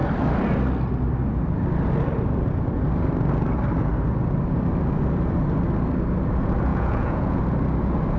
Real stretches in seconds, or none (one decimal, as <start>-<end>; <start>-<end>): 0.0-6.7; 7.4-8.2